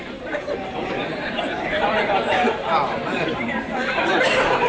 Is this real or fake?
fake